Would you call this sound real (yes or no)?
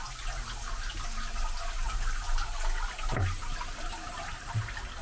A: yes